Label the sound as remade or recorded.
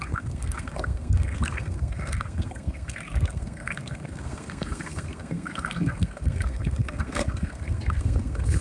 remade